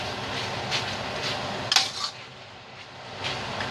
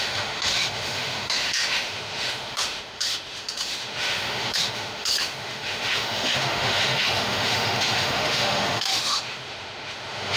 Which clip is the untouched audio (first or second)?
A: first